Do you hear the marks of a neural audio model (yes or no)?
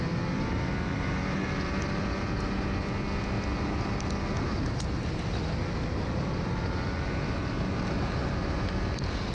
no